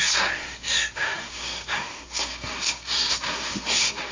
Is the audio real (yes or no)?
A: no